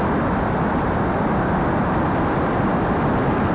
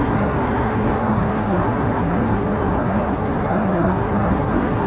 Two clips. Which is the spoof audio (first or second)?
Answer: second